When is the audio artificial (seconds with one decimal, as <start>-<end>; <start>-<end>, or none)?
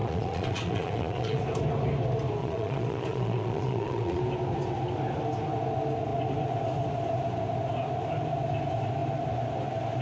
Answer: 0.0-1.4; 2.4-4.2